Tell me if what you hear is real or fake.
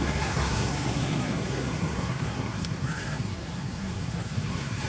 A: fake